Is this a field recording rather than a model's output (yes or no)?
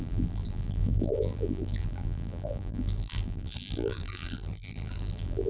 no